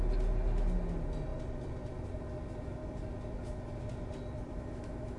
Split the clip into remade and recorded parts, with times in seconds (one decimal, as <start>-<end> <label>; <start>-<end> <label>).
0.0-4.5 recorded; 4.5-5.2 remade